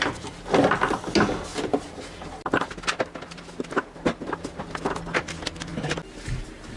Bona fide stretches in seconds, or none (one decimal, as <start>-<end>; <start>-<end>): 0.0-6.8